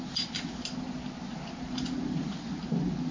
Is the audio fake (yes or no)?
no